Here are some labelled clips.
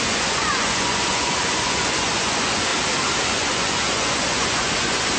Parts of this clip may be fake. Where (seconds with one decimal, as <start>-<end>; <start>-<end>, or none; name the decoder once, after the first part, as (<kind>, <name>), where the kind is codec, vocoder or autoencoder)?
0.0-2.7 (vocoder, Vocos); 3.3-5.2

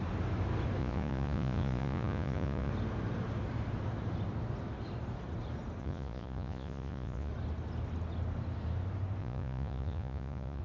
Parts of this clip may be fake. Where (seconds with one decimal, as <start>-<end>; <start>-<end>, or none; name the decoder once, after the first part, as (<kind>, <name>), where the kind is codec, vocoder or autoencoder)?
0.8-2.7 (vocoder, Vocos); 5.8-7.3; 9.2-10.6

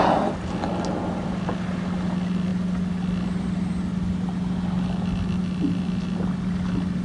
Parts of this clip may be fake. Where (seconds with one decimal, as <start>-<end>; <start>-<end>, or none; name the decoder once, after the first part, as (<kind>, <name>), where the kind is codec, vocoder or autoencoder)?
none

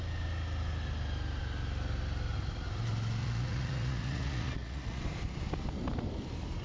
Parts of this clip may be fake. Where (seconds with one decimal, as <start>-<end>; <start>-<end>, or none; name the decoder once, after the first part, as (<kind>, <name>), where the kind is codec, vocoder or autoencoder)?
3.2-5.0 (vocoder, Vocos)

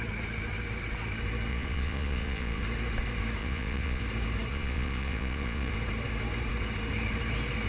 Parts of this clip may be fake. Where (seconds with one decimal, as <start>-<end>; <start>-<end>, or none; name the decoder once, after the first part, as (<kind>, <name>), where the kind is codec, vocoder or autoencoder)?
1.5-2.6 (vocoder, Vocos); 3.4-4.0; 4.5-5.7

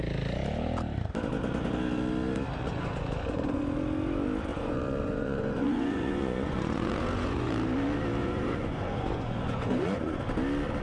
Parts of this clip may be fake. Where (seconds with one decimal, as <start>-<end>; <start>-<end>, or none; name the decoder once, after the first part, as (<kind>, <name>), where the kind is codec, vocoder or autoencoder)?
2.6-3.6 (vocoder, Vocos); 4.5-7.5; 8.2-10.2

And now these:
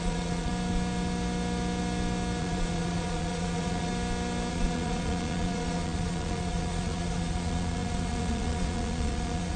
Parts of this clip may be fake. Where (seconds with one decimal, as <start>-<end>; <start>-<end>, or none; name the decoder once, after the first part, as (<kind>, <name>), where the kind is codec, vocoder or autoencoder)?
0.0-0.5 (vocoder, Vocos); 2.4-3.9; 4.5-9.6